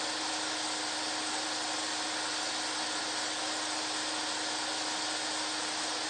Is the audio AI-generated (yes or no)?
no